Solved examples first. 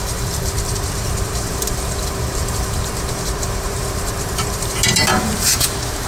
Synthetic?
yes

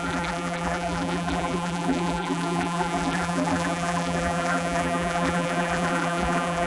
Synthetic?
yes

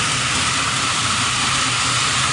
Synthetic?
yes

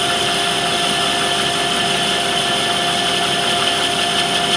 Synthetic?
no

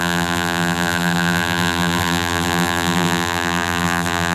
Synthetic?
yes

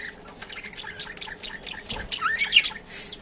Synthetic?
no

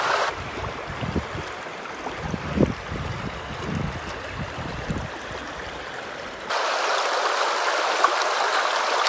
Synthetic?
no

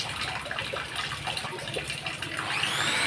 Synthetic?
no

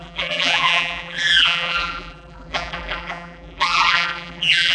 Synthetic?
yes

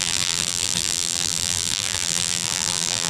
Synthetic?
yes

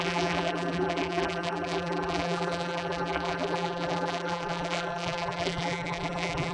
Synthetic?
yes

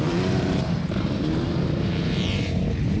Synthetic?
yes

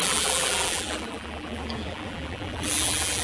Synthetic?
yes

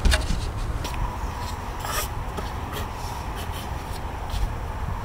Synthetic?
no